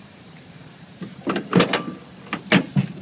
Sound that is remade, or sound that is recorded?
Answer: recorded